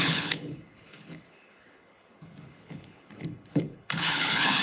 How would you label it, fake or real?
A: fake